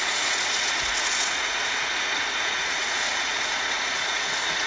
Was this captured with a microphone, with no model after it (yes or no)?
no